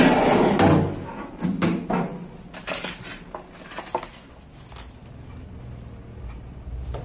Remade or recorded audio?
recorded